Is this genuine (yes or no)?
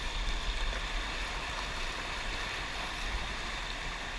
yes